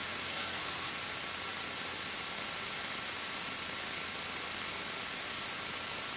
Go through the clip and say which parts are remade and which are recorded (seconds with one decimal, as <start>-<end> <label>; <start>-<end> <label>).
0.0-0.9 remade; 0.9-6.2 recorded